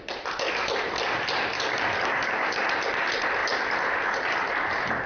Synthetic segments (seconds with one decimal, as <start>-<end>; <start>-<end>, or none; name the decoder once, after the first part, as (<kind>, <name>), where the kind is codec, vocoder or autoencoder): none